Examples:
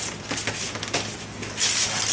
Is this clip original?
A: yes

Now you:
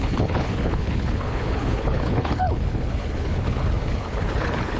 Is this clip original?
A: no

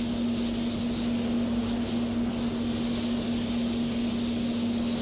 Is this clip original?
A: yes